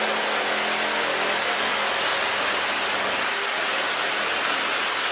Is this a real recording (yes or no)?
yes